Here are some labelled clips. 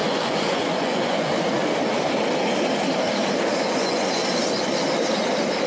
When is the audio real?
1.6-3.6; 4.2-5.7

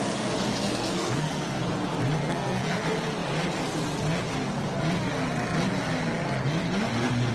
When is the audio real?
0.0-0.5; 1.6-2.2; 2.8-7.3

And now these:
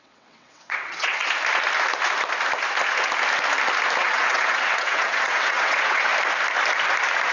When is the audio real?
1.2-4.0; 6.1-7.3

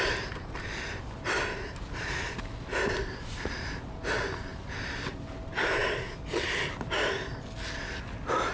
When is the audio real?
0.0-8.5

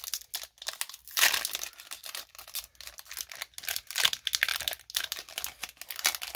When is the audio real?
0.0-6.4

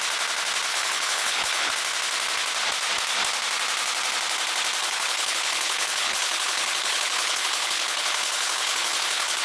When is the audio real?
0.0-0.7; 1.7-4.8

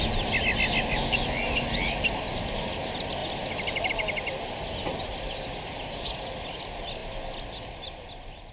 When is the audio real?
0.0-8.5

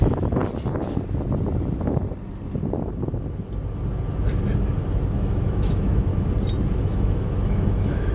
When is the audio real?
0.4-5.3; 6.1-6.8